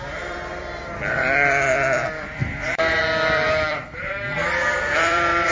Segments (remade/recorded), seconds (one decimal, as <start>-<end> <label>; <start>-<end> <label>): 0.0-5.5 remade